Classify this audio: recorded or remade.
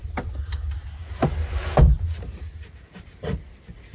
recorded